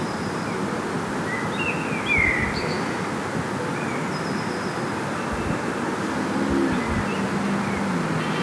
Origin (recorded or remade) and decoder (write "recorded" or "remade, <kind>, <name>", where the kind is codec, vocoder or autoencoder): recorded